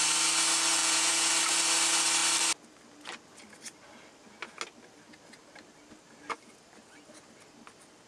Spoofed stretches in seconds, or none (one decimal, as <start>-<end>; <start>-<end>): 0.8-1.3